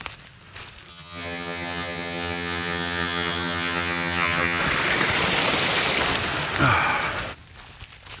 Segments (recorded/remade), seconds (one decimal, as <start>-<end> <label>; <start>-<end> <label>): 0.0-0.9 recorded; 0.9-4.6 remade; 4.6-8.2 recorded